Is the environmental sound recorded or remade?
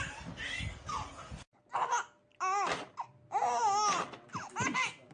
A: recorded